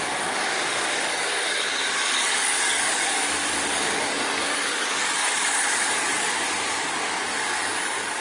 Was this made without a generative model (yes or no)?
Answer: no